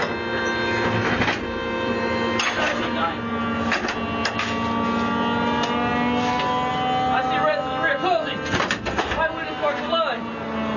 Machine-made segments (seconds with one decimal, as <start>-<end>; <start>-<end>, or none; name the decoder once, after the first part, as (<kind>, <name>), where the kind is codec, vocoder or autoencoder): none